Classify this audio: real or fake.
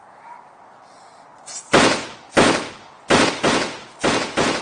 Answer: real